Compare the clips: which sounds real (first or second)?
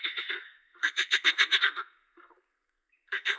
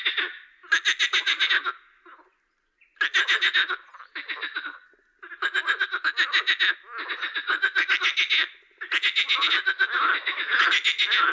second